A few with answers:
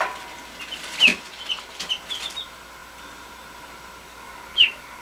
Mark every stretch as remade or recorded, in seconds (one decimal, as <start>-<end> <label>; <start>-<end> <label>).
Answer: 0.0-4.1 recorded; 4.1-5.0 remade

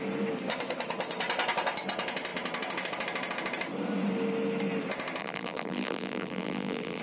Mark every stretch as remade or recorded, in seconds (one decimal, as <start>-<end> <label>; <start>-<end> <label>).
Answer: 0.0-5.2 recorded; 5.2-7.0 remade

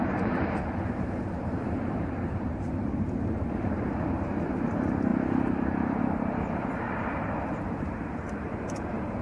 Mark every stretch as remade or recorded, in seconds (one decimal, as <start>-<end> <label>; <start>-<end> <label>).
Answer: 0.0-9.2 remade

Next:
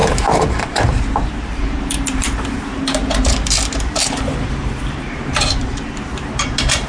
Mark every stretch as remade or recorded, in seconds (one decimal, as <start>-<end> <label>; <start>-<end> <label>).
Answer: 0.0-6.9 remade

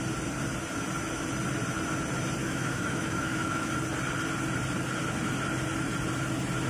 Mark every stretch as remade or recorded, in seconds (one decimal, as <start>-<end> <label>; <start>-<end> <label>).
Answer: 0.0-2.4 recorded; 2.4-3.7 remade; 3.7-6.7 recorded